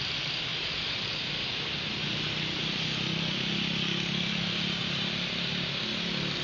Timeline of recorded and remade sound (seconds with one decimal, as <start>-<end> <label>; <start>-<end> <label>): 0.0-0.5 recorded; 0.5-1.3 remade; 1.3-6.4 recorded